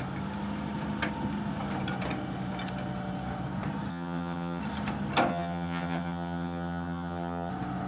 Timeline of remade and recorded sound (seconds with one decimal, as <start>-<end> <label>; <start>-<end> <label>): 0.0-3.9 recorded; 3.9-4.6 remade; 4.6-5.3 recorded; 5.3-7.5 remade; 7.5-7.9 recorded